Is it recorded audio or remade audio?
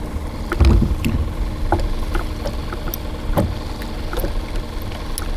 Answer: recorded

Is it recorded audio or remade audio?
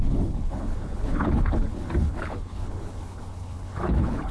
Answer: remade